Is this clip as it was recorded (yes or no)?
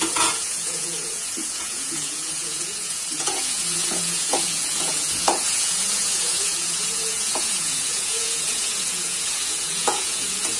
no